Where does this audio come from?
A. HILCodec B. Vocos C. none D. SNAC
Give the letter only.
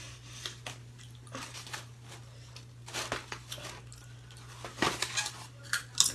C